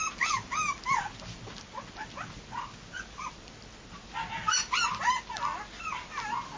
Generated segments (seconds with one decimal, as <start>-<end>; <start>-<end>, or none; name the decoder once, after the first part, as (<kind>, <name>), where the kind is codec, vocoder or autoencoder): none